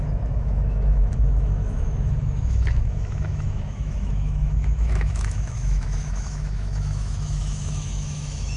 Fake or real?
fake